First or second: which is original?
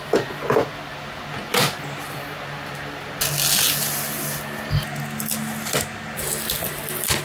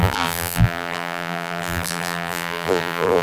first